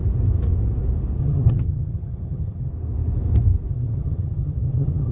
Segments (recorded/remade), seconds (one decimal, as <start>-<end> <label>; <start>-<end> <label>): 0.0-1.2 recorded; 1.2-2.7 remade; 2.7-3.7 recorded; 3.7-5.1 remade

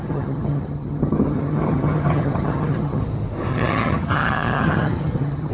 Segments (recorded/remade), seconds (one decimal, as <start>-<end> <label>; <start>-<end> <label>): 0.0-3.0 remade; 3.0-3.5 recorded; 3.5-5.5 remade

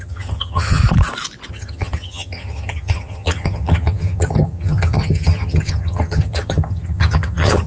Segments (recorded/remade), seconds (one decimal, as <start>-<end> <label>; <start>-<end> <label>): 0.0-0.8 remade; 0.8-1.5 recorded; 1.5-7.7 remade